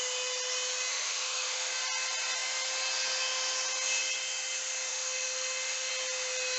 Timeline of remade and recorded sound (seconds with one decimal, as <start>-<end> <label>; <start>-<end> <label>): 0.0-0.9 recorded; 0.9-1.7 remade; 1.7-4.9 recorded; 4.9-5.9 remade; 5.9-6.6 recorded

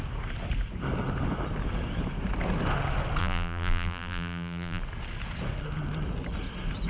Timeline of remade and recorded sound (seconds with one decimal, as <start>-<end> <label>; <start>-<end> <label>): 0.0-3.2 recorded; 3.2-4.8 remade; 4.8-6.9 recorded